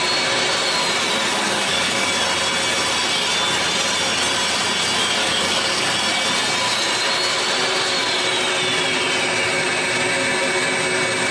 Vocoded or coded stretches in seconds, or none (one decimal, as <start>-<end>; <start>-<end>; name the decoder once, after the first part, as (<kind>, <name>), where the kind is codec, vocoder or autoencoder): 1.3-2.1 (codec, DAC); 5.2-5.9